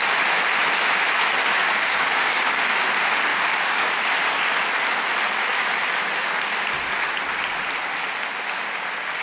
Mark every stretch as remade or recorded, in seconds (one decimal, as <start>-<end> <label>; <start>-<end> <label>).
0.0-1.6 recorded; 1.6-2.9 remade; 2.9-3.3 recorded; 3.3-3.9 remade; 3.9-9.2 recorded